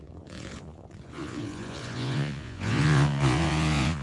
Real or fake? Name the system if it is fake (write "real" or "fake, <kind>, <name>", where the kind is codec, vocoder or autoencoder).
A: fake, vocoder, Vocos